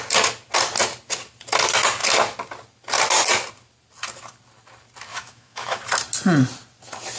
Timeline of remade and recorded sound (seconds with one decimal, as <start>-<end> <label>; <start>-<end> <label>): 0.0-5.1 recorded; 5.1-5.8 remade; 5.8-7.2 recorded